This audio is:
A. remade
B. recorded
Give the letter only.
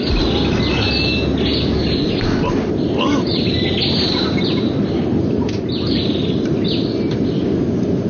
B